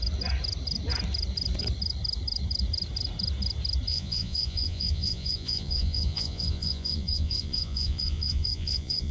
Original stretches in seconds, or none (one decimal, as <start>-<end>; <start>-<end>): 0.0-3.9